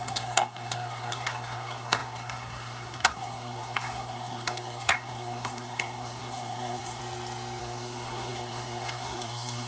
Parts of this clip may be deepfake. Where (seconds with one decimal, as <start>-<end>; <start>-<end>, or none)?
0.0-7.0; 7.6-9.7